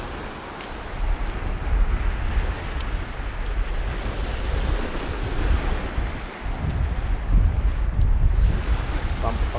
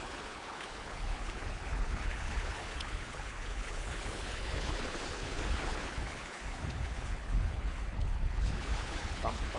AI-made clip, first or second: second